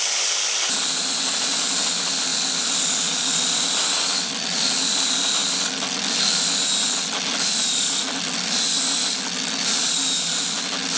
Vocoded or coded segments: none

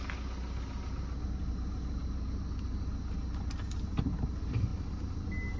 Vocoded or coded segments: none